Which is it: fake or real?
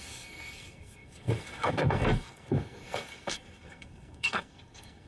fake